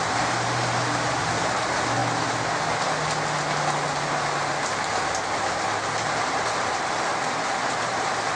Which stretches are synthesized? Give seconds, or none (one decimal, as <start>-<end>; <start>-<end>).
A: 0.0-2.0; 6.2-8.4